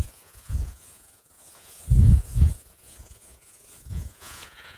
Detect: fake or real fake